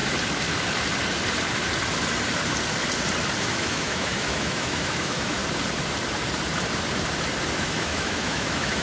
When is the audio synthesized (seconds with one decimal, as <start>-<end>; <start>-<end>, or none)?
3.4-5.4; 7.6-8.8